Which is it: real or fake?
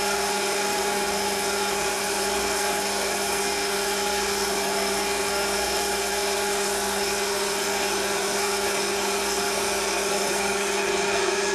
fake